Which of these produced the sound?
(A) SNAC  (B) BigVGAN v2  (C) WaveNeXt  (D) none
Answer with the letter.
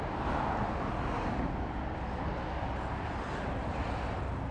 D